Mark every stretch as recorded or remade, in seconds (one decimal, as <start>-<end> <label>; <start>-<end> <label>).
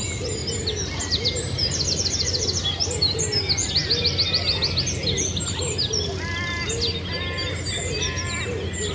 0.0-8.9 recorded